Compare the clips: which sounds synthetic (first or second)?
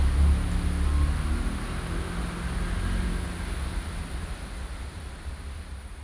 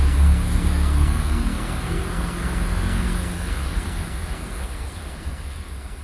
second